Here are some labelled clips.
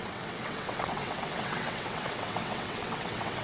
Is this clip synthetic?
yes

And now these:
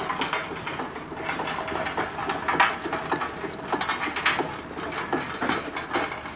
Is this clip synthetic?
no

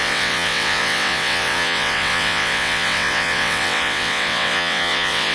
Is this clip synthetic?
yes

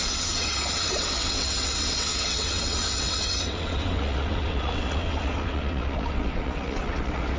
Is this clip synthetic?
yes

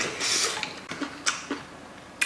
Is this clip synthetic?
no